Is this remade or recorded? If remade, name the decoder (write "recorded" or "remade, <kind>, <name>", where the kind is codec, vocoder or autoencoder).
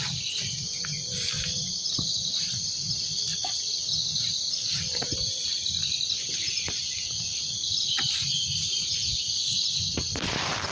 remade, vocoder, BigVGAN v2